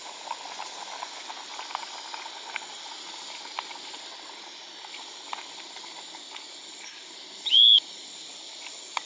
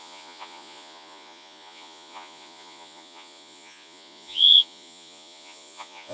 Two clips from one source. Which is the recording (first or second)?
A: first